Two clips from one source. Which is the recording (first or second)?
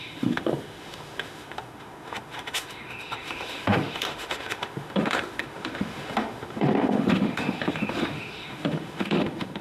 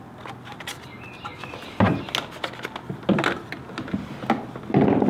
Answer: second